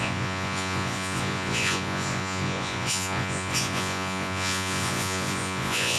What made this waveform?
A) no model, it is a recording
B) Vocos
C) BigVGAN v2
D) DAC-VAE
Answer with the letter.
B